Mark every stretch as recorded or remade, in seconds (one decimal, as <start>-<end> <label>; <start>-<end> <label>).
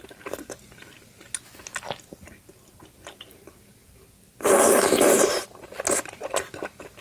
0.0-7.0 recorded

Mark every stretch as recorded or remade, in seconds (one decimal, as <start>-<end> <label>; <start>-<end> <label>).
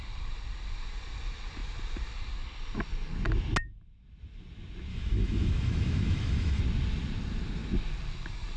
0.0-4.9 recorded; 4.9-6.6 remade; 6.6-8.6 recorded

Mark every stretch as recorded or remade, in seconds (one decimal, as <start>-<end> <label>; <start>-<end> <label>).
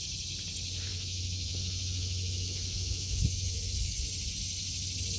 0.0-0.9 recorded; 0.9-4.0 remade; 4.0-5.2 recorded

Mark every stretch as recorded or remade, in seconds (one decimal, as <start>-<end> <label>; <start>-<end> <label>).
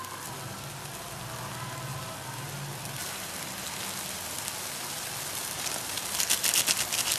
0.0-7.2 recorded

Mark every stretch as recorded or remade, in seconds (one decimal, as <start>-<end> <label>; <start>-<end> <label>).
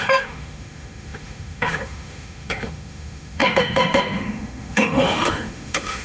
0.0-6.0 remade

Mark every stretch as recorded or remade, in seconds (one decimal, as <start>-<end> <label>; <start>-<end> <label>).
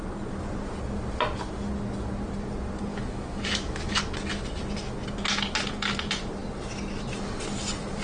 0.0-2.9 recorded; 2.9-4.0 remade; 4.0-8.0 recorded